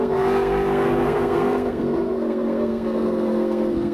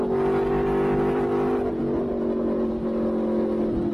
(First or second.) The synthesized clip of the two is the first